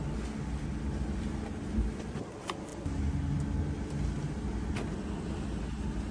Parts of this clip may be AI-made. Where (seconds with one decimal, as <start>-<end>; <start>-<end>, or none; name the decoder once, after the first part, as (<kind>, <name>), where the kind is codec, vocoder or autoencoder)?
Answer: none